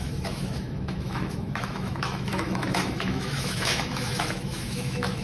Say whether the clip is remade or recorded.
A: remade